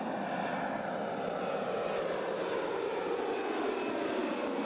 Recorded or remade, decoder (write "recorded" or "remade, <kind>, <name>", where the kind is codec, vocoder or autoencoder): recorded